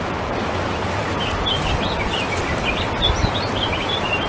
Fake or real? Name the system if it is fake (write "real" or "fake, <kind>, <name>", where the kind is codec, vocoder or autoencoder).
real